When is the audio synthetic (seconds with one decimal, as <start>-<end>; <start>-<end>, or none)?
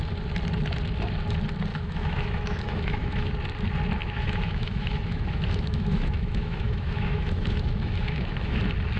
1.7-3.3; 4.0-8.6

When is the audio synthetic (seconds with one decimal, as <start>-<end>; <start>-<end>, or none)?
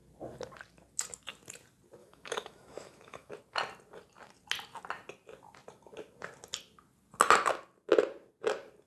2.0-3.3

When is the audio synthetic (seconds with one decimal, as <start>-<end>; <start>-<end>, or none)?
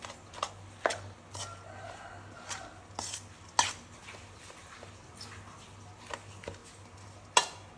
none